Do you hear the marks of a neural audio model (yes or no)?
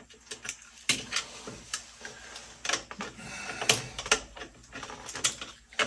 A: no